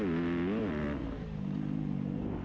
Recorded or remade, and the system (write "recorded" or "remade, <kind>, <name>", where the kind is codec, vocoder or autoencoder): recorded